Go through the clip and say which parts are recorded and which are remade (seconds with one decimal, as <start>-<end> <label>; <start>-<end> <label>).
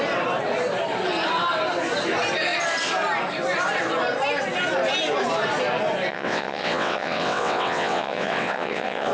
0.0-6.1 recorded; 6.1-9.1 remade